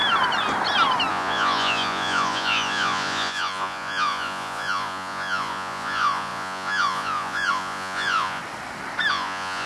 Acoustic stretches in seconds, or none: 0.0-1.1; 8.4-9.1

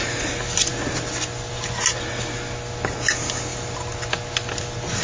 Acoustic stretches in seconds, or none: 0.0-5.0